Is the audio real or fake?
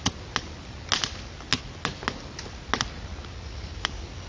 real